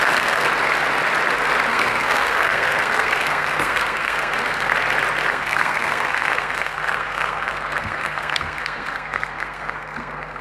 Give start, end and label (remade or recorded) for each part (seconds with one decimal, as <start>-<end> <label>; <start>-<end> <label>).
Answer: 0.0-0.5 remade; 0.5-1.7 recorded; 1.7-4.7 remade; 4.7-5.3 recorded; 5.3-10.4 remade